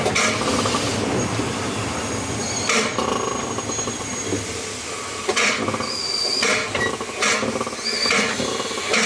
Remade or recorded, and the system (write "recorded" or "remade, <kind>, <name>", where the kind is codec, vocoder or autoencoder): recorded